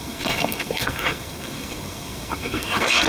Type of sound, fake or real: fake